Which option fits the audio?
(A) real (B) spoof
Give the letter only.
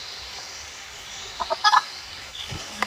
B